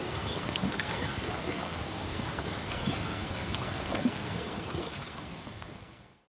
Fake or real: fake